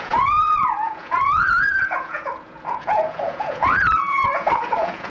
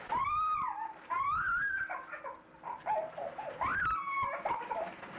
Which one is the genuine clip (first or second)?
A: second